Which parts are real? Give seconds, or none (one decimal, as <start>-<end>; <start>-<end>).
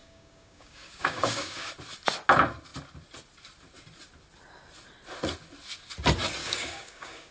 1.7-6.4